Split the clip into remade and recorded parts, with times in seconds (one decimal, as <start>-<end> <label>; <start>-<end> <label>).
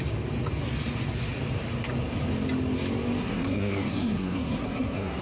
0.0-3.2 recorded; 3.2-5.2 remade